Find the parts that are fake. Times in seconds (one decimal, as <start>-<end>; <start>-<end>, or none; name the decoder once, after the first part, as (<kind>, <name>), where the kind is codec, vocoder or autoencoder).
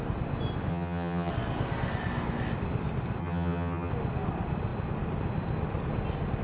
0.7-1.3 (vocoder, HiFi-GAN); 3.2-3.9